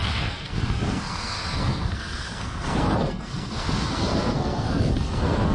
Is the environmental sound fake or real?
fake